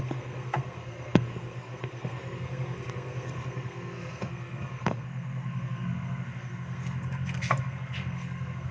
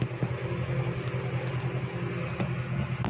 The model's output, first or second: first